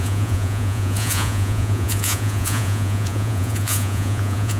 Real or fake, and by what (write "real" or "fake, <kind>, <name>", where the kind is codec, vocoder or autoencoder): fake, vocoder, Vocos